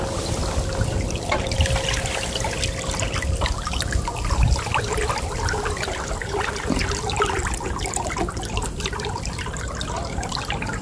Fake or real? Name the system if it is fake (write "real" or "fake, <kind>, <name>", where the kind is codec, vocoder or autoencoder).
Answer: real